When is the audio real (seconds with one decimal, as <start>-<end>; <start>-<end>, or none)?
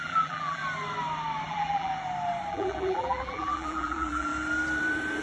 0.6-1.5; 1.9-2.5; 4.3-5.2